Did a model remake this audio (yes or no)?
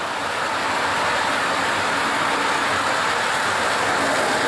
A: no